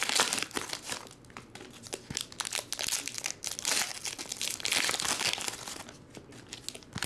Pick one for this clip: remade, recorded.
recorded